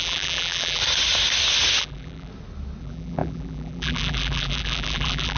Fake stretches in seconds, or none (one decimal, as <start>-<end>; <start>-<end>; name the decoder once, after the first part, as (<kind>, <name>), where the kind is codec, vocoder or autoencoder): 0.0-0.8 (vocoder, BigVGAN v2); 1.8-2.3; 2.8-5.4